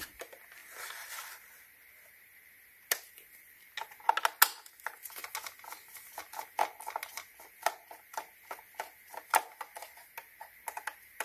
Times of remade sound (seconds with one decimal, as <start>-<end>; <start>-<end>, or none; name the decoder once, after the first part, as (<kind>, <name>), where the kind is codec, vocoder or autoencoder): none